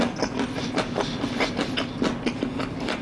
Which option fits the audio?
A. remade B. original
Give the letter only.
B